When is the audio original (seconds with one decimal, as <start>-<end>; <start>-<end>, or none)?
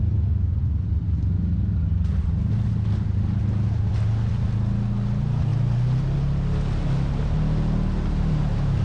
0.0-8.8